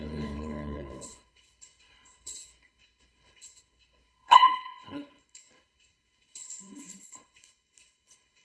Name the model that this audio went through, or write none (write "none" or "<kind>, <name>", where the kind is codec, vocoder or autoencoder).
codec, HILCodec